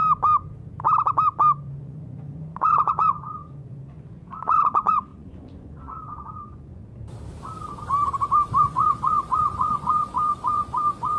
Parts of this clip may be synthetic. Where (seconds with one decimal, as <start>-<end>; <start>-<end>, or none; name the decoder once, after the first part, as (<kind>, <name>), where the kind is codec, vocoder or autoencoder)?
1.7-6.8 (vocoder, Vocos); 8.6-11.2